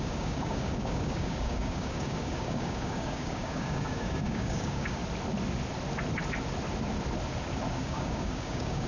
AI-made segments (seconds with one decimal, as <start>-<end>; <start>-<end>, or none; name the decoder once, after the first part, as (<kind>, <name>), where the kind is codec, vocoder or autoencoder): 0.0-5.0 (codec, DAC); 7.7-8.9